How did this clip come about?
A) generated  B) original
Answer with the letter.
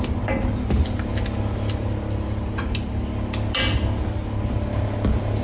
B